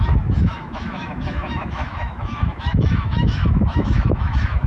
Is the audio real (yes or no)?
no